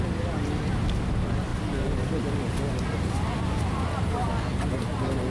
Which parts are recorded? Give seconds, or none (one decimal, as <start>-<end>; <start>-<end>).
0.0-5.3